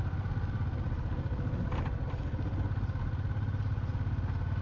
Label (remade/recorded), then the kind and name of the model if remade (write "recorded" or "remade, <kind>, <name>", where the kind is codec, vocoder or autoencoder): recorded